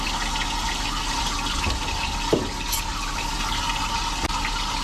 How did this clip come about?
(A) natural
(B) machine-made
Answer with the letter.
A